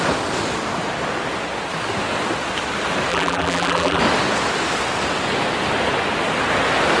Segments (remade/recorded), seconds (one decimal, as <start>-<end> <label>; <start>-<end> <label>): 0.0-3.1 recorded; 3.1-4.0 remade; 4.0-7.0 recorded